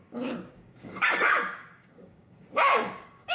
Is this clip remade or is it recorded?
remade